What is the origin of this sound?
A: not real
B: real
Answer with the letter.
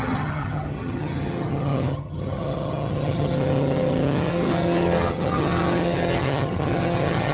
A